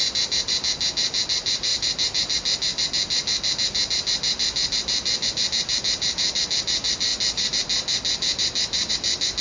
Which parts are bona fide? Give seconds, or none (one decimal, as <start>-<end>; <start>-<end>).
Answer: 0.0-9.4